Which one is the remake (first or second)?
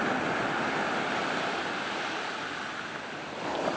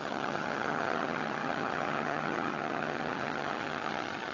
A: second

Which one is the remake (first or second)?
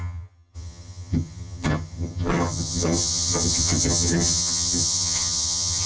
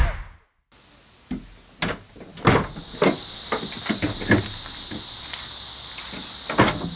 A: first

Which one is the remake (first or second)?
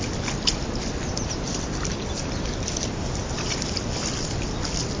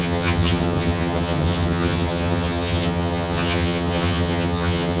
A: second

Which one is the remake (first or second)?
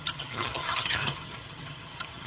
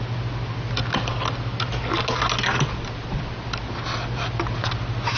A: first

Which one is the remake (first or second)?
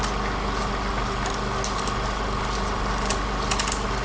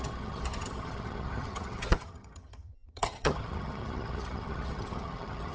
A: second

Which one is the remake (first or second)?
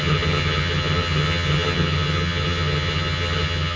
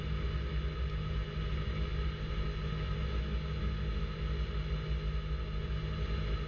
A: first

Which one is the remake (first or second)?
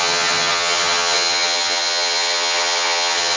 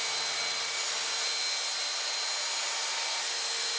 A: first